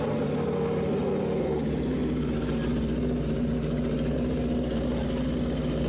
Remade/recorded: recorded